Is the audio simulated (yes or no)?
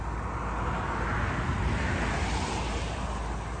no